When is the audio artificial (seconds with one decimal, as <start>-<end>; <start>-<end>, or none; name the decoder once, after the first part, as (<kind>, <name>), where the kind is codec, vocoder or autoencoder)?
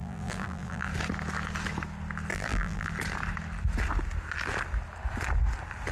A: 0.0-0.9 (vocoder, BigVGAN v2); 2.3-2.9